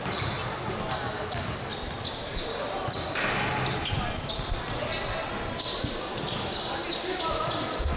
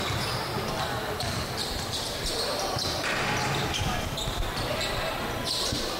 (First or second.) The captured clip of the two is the first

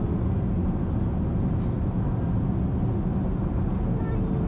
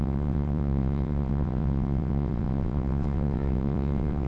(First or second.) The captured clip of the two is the first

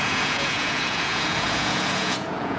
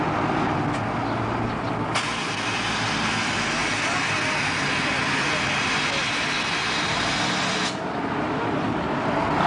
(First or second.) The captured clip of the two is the second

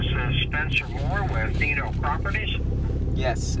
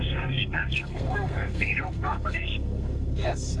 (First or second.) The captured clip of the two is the first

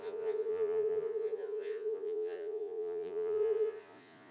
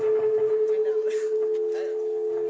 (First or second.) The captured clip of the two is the second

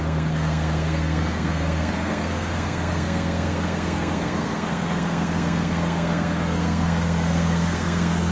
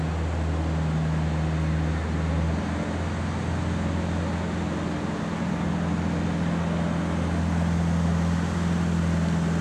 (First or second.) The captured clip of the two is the second